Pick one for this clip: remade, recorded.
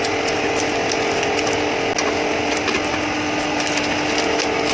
recorded